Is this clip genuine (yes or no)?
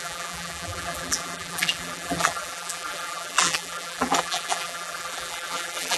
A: no